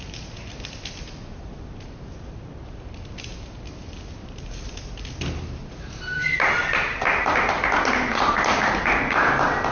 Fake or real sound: real